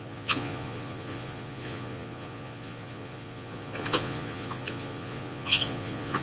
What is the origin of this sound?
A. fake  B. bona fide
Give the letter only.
A